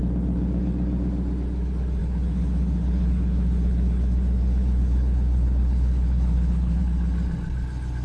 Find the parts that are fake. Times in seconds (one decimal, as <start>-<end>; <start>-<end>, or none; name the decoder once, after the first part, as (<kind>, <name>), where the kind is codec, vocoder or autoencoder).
2.0-6.8 (codec, HILCodec)